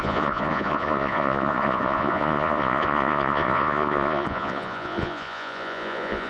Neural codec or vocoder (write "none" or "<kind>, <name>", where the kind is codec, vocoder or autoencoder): vocoder, Vocos